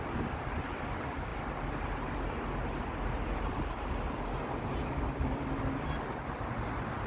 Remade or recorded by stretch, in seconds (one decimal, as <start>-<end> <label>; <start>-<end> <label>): 0.0-7.1 recorded